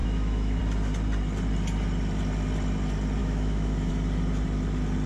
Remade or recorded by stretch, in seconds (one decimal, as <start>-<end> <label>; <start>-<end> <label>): 0.0-0.6 remade; 0.6-3.2 recorded; 3.2-3.9 remade; 3.9-5.1 recorded